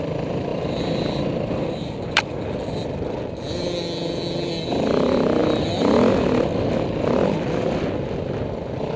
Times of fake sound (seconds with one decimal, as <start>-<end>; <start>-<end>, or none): 0.5-2.2